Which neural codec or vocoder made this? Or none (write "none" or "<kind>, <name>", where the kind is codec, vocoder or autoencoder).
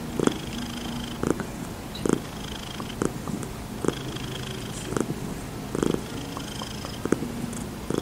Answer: none